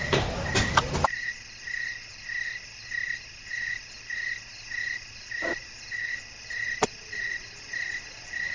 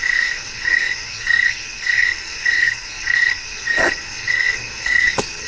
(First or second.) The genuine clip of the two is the first